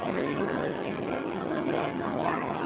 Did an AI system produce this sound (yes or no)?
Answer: yes